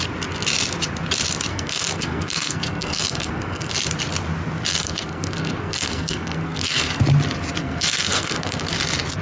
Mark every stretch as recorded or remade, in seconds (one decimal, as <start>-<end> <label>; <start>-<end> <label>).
0.0-1.5 recorded; 1.5-3.7 remade; 3.7-4.7 recorded; 4.7-7.0 remade; 7.0-7.6 recorded; 7.6-8.7 remade; 8.7-9.2 recorded